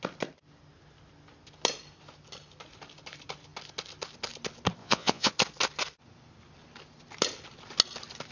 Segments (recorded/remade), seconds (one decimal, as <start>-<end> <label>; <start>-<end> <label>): 0.0-4.8 recorded; 4.8-5.3 remade; 5.3-8.3 recorded